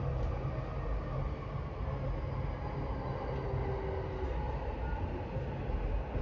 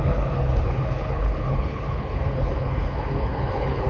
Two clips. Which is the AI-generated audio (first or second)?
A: second